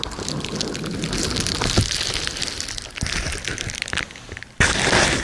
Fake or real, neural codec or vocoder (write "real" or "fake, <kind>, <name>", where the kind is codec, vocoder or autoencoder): real